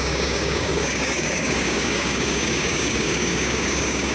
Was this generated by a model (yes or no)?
yes